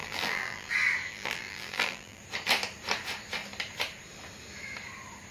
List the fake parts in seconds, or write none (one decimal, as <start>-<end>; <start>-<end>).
0.0-0.7; 1.1-2.2